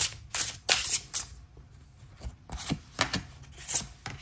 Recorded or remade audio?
recorded